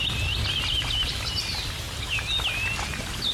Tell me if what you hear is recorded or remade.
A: recorded